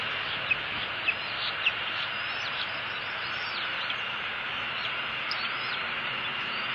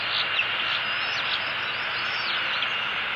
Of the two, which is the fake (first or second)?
first